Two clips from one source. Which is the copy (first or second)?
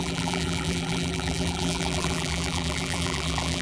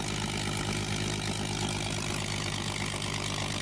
first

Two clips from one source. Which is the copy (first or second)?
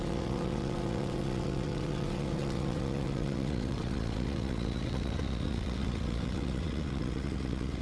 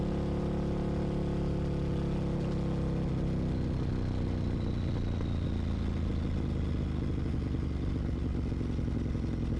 first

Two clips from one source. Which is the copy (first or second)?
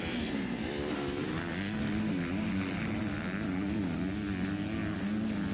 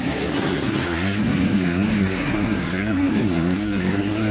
second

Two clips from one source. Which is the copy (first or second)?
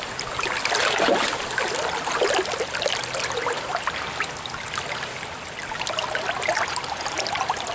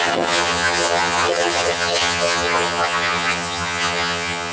second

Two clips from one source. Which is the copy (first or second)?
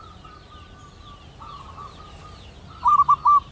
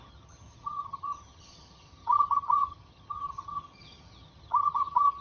second